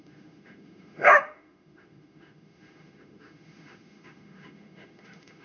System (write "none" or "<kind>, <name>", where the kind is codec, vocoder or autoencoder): autoencoder, DAC-VAE